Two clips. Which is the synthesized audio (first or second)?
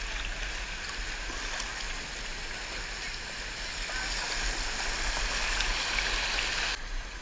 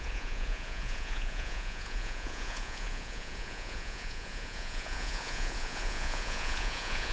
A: second